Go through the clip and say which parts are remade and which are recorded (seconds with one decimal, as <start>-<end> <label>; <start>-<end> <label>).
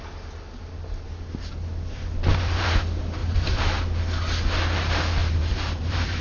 0.0-2.3 recorded; 2.3-2.8 remade; 2.8-3.2 recorded; 3.2-3.8 remade; 3.8-5.2 recorded; 5.2-6.2 remade